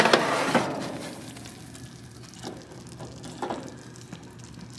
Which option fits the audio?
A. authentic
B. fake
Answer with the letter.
A